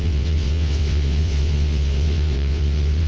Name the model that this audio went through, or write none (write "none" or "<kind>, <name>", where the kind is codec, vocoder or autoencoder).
vocoder, WaveNeXt